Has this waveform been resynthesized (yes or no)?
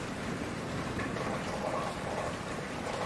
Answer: yes